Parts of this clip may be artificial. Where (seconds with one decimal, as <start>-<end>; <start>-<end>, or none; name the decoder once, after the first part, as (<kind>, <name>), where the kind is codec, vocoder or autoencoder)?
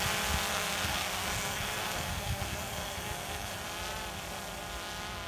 0.5-3.5 (codec, SNAC)